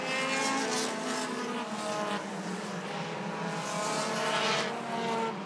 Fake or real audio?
real